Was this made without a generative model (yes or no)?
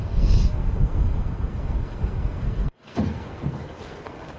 no